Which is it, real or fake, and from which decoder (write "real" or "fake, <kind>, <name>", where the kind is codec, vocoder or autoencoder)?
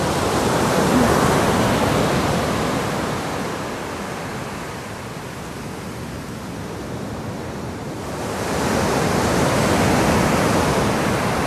real